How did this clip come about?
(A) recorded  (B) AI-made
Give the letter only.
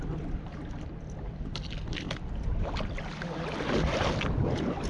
A